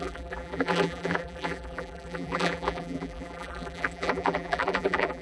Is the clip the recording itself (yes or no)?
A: no